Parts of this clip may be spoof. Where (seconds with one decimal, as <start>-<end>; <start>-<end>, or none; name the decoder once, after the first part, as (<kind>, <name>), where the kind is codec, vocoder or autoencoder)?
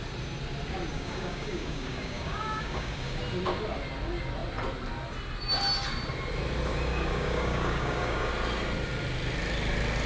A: 0.9-3.2 (codec, DAC); 6.7-8.3